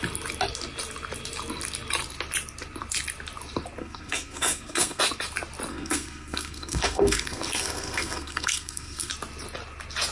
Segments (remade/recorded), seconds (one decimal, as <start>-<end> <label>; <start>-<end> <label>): 0.0-3.8 recorded; 3.8-5.0 remade; 5.0-5.7 recorded; 5.7-9.1 remade; 9.1-10.1 recorded